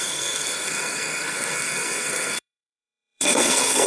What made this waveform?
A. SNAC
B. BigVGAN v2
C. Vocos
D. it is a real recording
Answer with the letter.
A